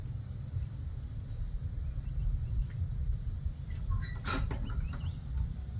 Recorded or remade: recorded